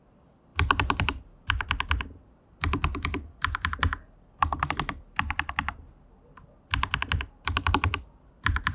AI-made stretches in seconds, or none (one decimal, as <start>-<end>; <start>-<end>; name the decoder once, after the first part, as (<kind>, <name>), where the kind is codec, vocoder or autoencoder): none